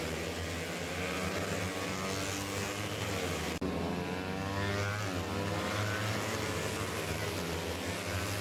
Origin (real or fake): real